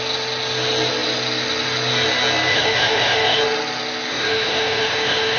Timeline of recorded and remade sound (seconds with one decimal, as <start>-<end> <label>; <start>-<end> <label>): 0.0-2.5 recorded; 2.5-3.4 remade; 3.4-4.1 recorded; 4.1-5.4 remade

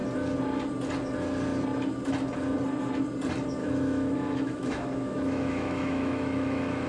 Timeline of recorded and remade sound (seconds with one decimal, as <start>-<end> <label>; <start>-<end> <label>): 0.0-3.6 recorded; 3.6-6.9 remade

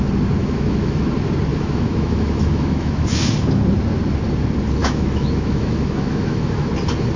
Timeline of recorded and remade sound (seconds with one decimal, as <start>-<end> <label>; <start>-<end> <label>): 0.0-0.4 recorded; 0.4-1.0 remade; 1.0-1.5 recorded; 1.5-3.2 remade; 3.2-4.8 recorded; 4.8-6.7 remade; 6.7-7.2 recorded

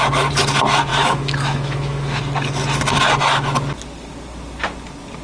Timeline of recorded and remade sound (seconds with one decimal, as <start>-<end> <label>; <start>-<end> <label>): 0.0-0.9 recorded; 0.9-2.2 remade; 2.2-5.2 recorded

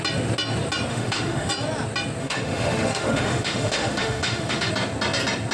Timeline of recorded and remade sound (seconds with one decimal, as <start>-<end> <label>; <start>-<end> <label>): 0.0-0.9 recorded; 0.9-1.5 remade; 1.5-2.2 recorded; 2.2-4.7 remade; 4.7-5.5 recorded

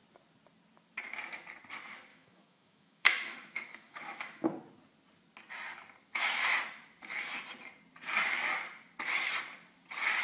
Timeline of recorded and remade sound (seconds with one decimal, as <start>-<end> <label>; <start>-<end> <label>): 0.0-2.1 recorded; 2.1-4.5 remade; 4.5-10.2 recorded

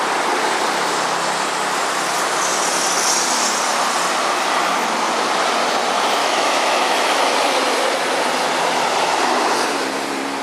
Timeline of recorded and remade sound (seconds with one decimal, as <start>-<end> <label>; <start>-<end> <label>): 0.0-6.2 recorded; 6.2-7.2 remade; 7.2-10.4 recorded